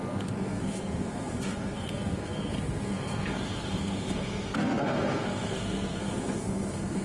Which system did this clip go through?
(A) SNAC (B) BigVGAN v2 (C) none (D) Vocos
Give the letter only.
A